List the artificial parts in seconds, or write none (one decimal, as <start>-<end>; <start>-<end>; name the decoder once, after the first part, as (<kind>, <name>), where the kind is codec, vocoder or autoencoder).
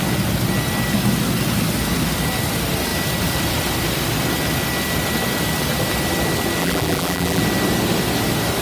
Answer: 6.6-7.4 (vocoder, BigVGAN v2)